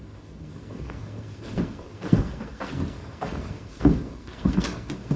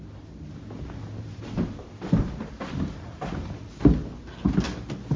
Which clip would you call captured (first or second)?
second